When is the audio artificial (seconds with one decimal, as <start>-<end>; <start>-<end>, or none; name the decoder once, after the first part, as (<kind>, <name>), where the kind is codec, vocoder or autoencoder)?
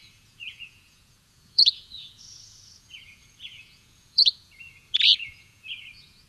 0.0-6.3 (vocoder, Vocos)